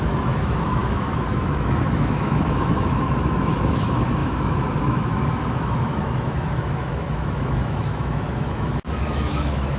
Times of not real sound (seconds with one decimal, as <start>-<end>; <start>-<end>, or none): 0.0-9.8